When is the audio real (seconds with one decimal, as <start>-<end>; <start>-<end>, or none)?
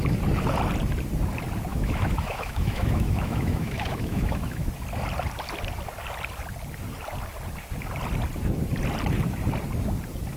0.0-1.7; 4.7-10.4